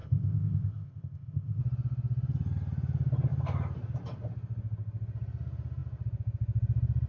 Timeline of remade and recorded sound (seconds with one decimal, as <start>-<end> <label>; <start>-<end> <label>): 0.0-1.6 remade; 1.6-7.1 recorded